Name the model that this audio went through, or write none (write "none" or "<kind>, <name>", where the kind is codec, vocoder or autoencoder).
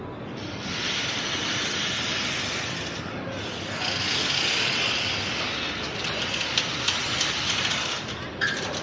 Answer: none